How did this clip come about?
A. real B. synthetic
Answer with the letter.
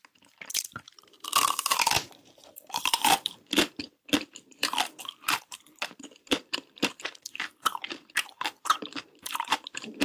B